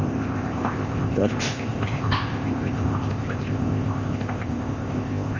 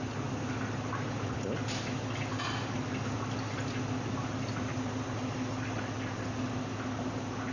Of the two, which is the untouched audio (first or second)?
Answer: second